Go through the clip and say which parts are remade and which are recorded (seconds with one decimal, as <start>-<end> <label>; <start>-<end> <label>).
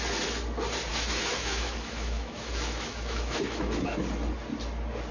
0.0-0.9 recorded; 0.9-4.0 remade; 4.0-5.1 recorded